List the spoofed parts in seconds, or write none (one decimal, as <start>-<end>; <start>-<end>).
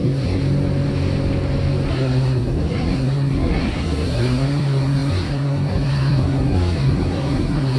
0.0-0.4; 1.9-7.8